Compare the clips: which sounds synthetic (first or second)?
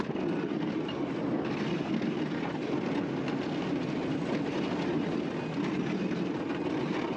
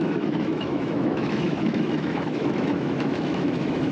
second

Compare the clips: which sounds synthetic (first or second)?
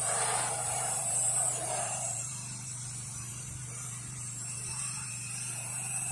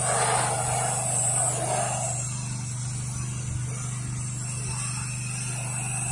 first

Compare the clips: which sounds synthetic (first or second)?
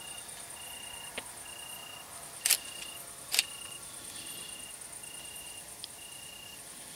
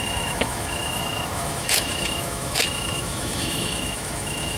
second